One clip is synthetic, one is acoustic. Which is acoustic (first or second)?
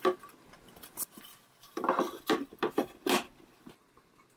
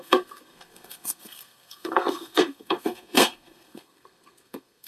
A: first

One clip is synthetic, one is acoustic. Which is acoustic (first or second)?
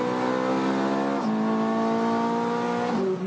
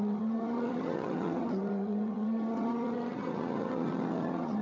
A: first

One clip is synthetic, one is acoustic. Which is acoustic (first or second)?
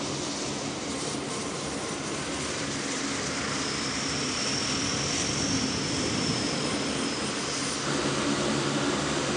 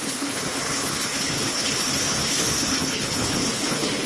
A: first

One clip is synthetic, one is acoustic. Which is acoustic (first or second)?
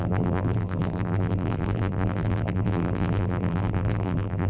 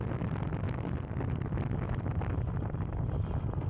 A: second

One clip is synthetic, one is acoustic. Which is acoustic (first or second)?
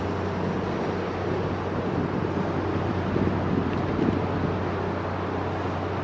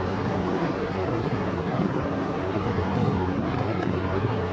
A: first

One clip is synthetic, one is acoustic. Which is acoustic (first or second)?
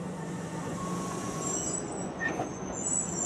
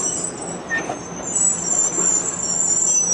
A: second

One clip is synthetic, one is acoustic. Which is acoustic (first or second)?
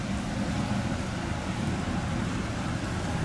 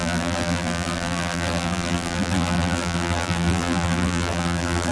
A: first